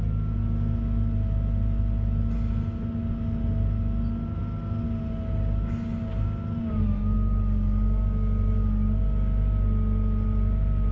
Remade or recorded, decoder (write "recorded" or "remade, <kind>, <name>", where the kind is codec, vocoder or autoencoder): recorded